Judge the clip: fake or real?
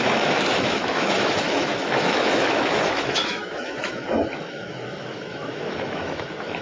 fake